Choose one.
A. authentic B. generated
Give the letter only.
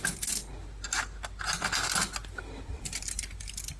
A